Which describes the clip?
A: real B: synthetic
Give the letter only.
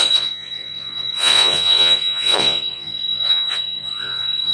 B